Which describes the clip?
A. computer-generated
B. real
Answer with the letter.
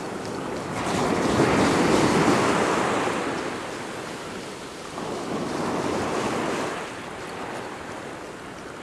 B